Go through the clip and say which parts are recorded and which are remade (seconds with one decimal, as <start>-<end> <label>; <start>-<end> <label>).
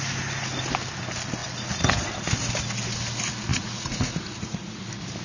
0.0-3.5 recorded; 3.5-4.8 remade; 4.8-5.2 recorded